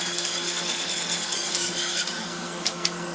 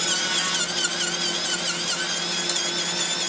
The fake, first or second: first